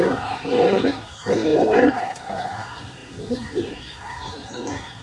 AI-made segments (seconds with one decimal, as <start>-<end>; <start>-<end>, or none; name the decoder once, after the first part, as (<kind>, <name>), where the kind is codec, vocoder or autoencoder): 0.0-5.0 (codec, SNAC)